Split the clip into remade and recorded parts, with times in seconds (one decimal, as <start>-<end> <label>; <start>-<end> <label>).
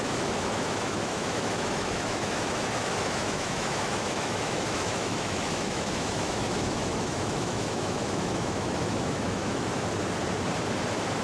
0.0-9.7 remade; 9.7-11.2 recorded